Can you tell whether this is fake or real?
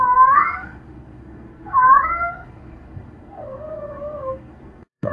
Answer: fake